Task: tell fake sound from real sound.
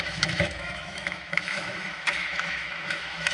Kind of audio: fake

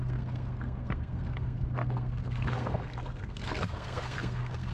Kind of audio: fake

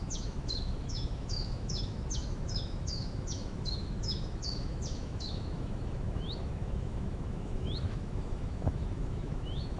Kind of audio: fake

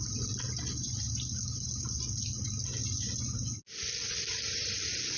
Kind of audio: real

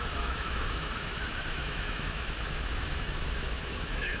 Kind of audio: fake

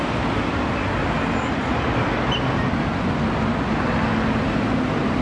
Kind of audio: real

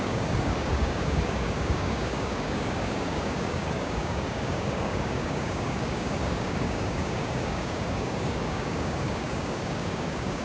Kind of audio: fake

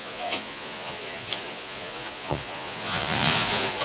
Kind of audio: fake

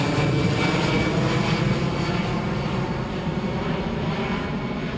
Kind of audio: real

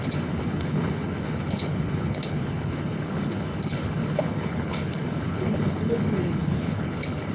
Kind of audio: fake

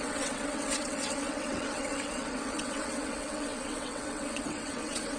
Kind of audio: fake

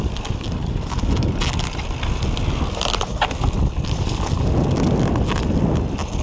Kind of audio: real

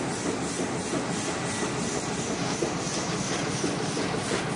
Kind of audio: real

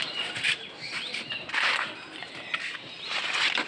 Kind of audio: real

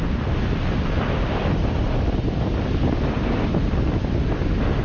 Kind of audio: fake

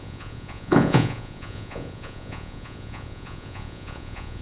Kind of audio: fake